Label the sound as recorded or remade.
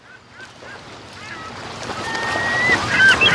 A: recorded